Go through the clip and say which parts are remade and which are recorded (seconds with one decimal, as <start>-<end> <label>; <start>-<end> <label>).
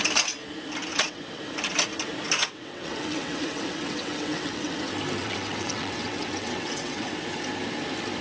0.0-0.9 recorded; 0.9-1.4 remade; 1.4-2.4 recorded; 2.4-4.8 remade; 4.8-5.2 recorded; 5.2-7.1 remade; 7.1-8.2 recorded